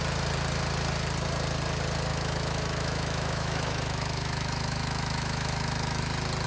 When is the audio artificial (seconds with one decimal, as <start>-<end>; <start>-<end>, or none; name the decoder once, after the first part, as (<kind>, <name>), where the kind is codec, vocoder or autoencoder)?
2.1-6.0 (autoencoder, DAC-VAE)